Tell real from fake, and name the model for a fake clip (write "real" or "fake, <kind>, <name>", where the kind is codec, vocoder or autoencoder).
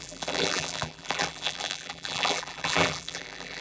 fake, vocoder, BigVGAN v2